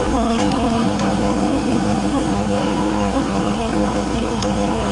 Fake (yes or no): yes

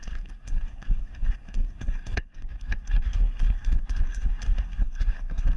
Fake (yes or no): yes